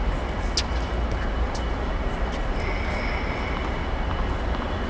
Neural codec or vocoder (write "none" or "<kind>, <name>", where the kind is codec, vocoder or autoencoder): none